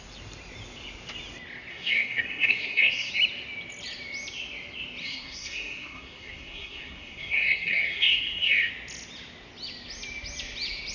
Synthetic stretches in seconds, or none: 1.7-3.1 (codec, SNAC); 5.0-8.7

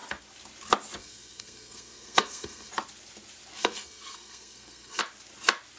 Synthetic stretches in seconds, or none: 1.0-2.7 (codec, SNAC); 3.6-5.0

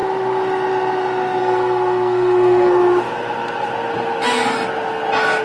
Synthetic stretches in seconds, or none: 1.4-2.7 (codec, SNAC)

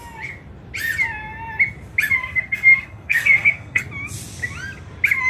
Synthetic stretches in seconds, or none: 2.2-3.8 (codec, SNAC)

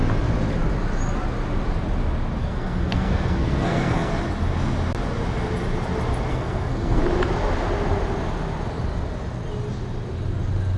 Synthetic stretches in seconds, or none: 2.4-4.1 (codec, SNAC); 6.3-7.0